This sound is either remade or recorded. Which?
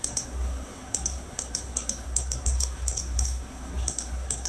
remade